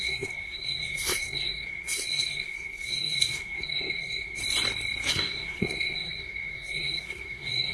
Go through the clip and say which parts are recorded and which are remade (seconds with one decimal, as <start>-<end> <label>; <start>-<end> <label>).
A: 0.0-4.4 remade; 4.4-5.1 recorded; 5.1-7.7 remade